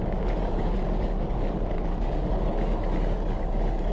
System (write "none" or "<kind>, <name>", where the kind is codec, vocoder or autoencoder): codec, DAC